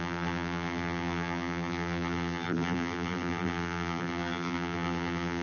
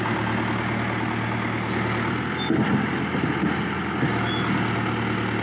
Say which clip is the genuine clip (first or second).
second